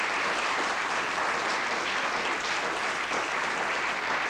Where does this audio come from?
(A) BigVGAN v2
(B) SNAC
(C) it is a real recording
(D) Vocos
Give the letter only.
C